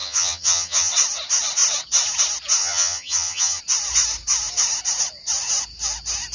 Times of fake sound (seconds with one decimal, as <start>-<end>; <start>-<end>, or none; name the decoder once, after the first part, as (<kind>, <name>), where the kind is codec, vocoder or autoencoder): 0.0-0.9 (vocoder, HiFi-GAN); 2.6-3.6